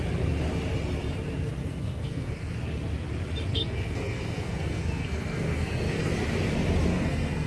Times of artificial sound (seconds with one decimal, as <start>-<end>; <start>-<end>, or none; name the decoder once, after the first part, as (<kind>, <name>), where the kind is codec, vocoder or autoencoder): 1.6-2.5 (codec, SNAC); 3.5-6.1; 6.9-7.5